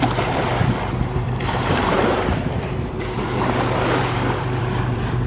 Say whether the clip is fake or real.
fake